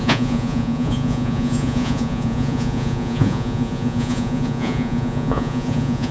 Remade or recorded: remade